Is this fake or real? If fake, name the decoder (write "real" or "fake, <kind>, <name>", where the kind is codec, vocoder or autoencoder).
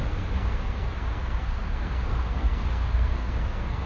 fake, codec, SNAC